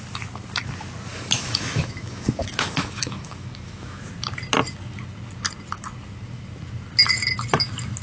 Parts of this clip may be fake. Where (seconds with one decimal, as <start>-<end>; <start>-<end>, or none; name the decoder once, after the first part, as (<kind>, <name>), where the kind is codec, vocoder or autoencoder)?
1.1-4.0 (autoencoder, DAC-VAE)